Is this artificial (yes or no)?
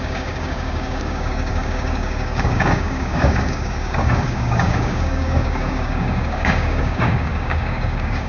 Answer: yes